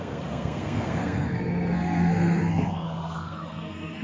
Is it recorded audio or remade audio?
remade